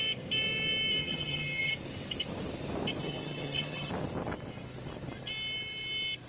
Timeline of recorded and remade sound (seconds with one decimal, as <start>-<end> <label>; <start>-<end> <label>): 0.0-1.0 recorded; 1.0-1.7 remade; 1.7-3.0 recorded; 3.0-3.9 remade; 3.9-6.3 recorded